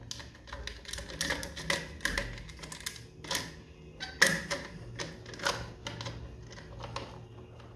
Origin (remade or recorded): recorded